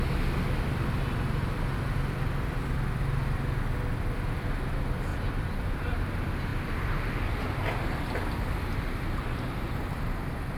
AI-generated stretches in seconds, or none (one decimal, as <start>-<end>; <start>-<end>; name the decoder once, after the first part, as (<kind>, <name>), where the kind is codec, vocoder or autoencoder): 5.1-5.9 (vocoder, BigVGAN v2); 6.5-7.3